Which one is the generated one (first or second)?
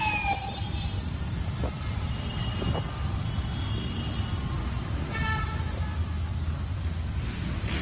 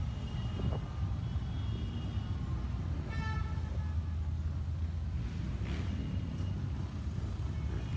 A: first